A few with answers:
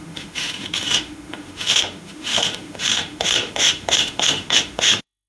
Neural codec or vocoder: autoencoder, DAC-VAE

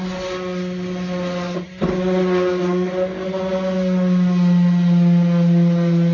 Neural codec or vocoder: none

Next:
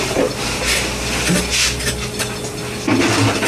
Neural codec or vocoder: none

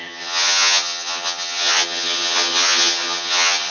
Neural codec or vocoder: vocoder, HiFi-GAN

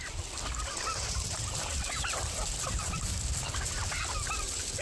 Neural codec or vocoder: none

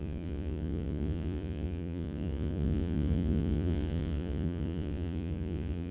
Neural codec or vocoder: vocoder, Vocos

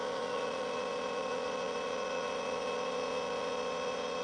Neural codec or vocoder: vocoder, Vocos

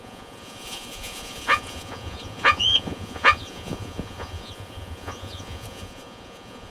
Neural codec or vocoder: vocoder, Vocos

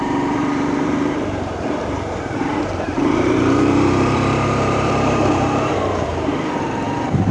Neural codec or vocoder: vocoder, BigVGAN v2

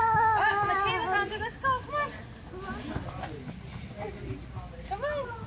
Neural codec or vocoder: none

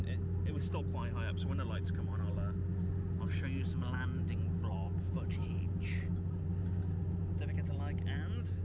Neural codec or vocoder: none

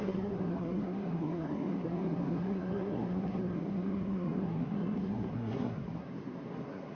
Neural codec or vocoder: codec, SNAC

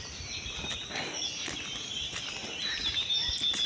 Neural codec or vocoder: none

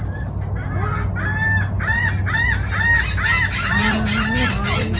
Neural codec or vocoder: none